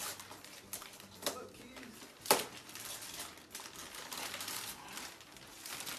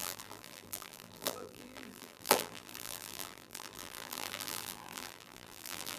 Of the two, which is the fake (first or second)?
second